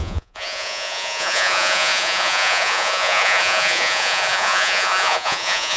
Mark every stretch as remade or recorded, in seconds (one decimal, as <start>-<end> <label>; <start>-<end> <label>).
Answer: 0.0-5.8 remade